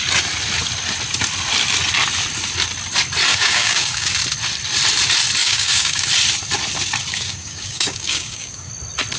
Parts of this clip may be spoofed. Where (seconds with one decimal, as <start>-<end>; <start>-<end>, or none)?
3.3-4.1; 5.4-6.1; 7.1-8.7